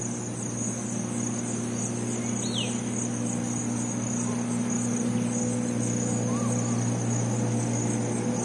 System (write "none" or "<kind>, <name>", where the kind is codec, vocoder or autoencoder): none